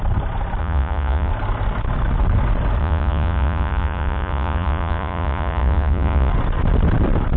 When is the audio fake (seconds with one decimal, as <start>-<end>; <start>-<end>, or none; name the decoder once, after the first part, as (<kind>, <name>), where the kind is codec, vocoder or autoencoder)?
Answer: 0.6-1.3 (vocoder, Vocos); 2.8-6.3